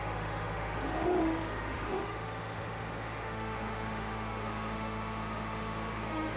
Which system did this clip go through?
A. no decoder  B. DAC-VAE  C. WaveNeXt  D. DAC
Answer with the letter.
B